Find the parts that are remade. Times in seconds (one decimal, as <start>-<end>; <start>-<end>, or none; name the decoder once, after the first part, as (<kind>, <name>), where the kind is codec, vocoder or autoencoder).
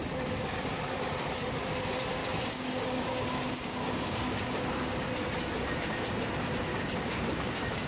2.2-4.6 (codec, DAC); 6.7-7.9